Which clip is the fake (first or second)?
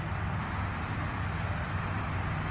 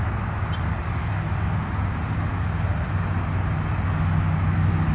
first